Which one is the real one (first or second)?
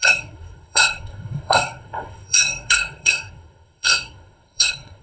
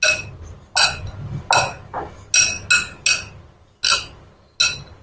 second